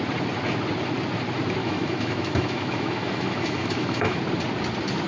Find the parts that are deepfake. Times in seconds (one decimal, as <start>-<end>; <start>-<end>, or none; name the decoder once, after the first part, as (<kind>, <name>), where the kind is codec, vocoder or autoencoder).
1.6-4.2 (autoencoder, DAC-VAE)